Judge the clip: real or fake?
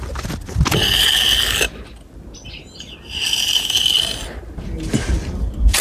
real